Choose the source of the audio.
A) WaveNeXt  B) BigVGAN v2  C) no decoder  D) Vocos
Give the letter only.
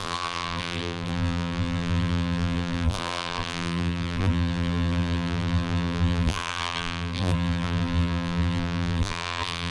B